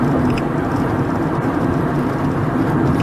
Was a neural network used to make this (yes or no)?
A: yes